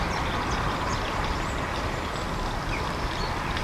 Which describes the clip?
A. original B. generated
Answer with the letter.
A